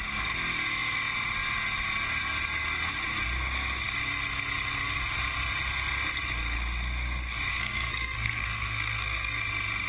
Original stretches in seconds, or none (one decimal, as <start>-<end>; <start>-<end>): 0.0-7.5; 9.4-9.9